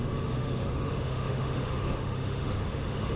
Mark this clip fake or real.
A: fake